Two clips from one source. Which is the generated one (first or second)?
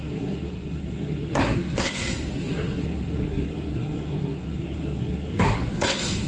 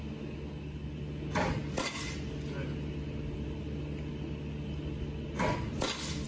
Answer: first